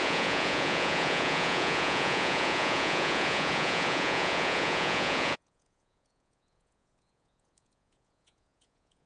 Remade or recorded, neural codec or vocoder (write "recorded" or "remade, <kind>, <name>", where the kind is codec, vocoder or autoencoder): remade, vocoder, Vocos